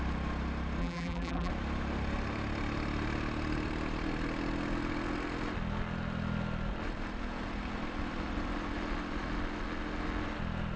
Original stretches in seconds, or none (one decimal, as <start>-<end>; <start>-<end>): 0.0-0.8; 1.5-10.8